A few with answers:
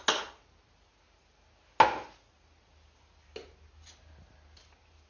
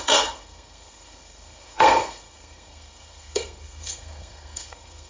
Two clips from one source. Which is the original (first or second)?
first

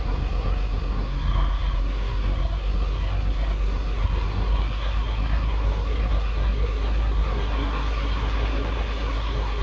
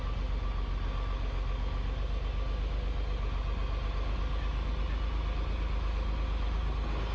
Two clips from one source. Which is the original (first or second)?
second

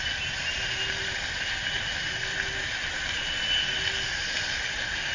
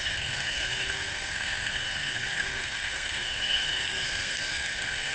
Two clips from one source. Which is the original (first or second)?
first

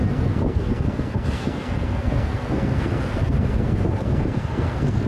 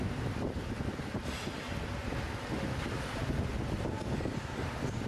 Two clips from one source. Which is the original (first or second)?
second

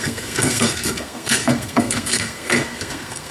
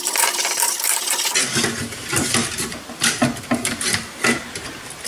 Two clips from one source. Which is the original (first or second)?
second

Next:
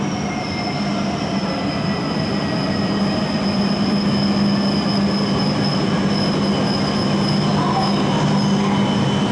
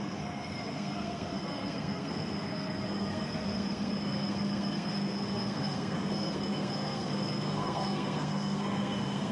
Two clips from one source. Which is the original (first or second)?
first